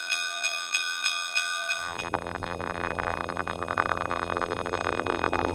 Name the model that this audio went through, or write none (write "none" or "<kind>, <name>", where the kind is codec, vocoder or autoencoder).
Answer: vocoder, BigVGAN v2